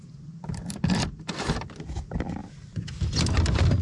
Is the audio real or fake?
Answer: real